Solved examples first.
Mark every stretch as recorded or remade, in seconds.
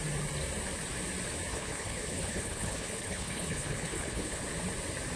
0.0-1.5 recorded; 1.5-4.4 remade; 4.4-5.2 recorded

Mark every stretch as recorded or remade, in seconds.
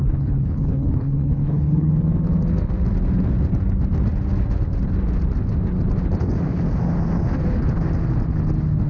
0.0-1.9 remade; 1.9-8.9 recorded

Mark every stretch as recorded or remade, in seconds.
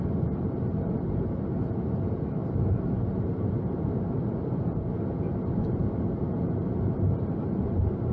0.0-8.1 recorded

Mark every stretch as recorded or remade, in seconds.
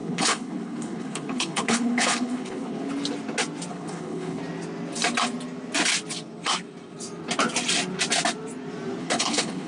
0.0-2.9 remade; 2.9-3.7 recorded; 3.7-4.4 remade; 4.4-9.0 recorded; 9.0-9.7 remade